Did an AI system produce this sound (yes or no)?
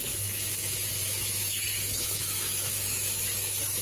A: yes